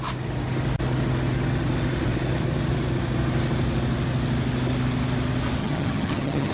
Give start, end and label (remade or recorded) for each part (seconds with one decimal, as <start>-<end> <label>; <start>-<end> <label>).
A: 0.0-5.6 recorded; 5.6-6.5 remade